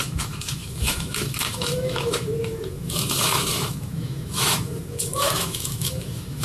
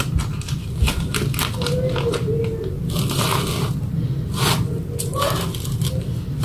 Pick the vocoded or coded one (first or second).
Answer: first